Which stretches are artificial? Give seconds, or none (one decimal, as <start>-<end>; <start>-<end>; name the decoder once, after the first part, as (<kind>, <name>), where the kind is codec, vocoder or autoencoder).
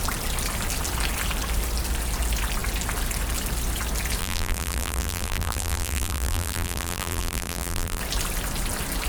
4.2-8.0 (vocoder, BigVGAN v2)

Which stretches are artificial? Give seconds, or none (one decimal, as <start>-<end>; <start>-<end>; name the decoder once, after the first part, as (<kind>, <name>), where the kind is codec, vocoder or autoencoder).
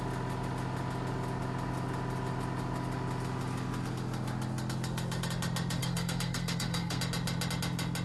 5.8-7.0 (codec, SNAC)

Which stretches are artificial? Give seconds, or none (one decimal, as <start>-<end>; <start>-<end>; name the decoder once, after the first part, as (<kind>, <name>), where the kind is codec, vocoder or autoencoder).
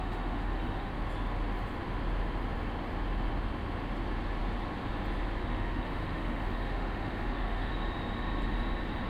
0.0-0.9 (autoencoder, DAC-VAE); 5.4-7.7